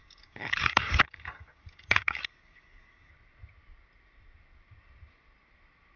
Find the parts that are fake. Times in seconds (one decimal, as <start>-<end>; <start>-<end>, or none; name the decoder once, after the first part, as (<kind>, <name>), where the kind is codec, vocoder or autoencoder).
0.0-3.1 (codec, DAC)